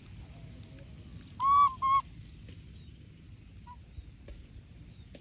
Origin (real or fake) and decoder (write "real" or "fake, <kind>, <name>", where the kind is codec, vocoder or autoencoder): real